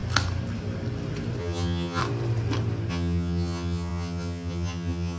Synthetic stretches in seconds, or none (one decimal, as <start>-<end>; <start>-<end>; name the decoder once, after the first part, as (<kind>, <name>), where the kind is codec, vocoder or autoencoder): 1.4-2.0 (vocoder, HiFi-GAN); 2.9-5.2